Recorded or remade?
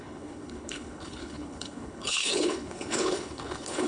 remade